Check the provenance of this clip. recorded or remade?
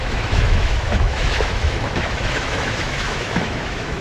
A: remade